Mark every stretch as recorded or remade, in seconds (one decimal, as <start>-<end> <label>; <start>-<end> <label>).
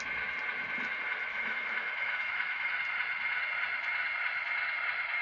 0.0-1.3 recorded; 1.3-2.7 remade; 2.7-5.2 recorded